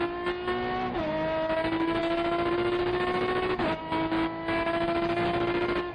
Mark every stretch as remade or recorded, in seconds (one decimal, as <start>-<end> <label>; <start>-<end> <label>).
0.0-5.9 recorded